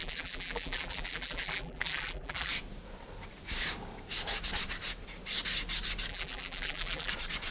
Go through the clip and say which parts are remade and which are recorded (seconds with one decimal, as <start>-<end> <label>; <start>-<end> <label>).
0.0-2.5 remade; 2.5-6.1 recorded; 6.1-7.1 remade; 7.1-7.5 recorded